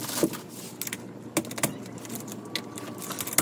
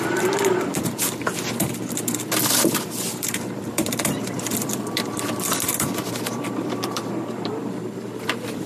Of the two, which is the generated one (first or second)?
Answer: second